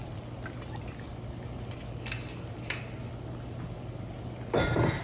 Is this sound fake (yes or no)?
no